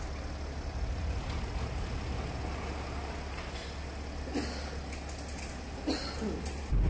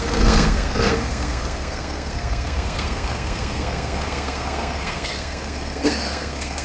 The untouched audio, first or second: first